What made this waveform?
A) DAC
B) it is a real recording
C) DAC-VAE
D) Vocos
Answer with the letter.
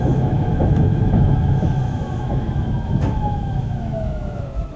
C